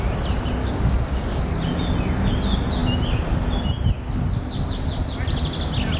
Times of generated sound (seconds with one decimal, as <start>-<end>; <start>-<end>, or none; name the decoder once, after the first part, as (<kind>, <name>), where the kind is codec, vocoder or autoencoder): 0.6-1.4 (codec, DAC)